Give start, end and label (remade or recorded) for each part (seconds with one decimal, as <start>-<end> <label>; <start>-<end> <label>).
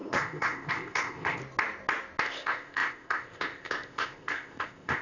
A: 0.0-1.4 remade; 1.4-2.2 recorded; 2.2-5.0 remade